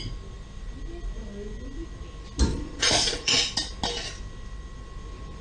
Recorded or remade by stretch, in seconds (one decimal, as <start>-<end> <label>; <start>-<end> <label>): 0.0-2.5 recorded; 2.5-3.4 remade; 3.4-5.4 recorded